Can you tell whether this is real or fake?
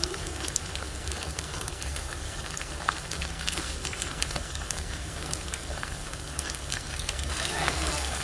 fake